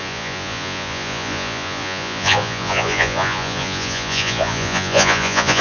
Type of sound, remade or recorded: remade